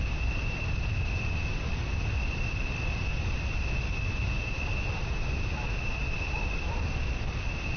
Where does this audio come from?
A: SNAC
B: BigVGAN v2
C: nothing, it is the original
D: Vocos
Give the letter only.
C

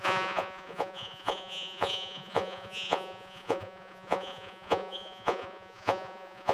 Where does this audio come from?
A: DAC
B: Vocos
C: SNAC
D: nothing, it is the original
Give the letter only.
B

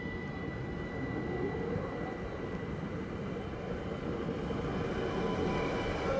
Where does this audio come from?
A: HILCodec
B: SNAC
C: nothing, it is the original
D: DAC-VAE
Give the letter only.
C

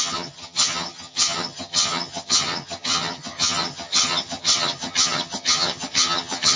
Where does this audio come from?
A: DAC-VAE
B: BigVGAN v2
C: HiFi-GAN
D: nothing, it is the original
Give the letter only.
C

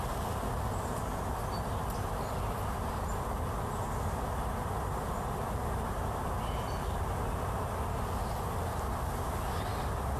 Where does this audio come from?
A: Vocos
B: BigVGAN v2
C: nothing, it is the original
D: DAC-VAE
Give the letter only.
C